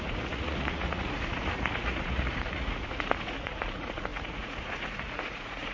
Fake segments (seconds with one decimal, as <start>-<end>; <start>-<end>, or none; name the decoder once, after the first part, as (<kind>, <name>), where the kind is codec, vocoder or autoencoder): 0.0-5.7 (vocoder, Vocos)